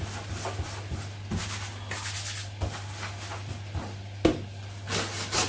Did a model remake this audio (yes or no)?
no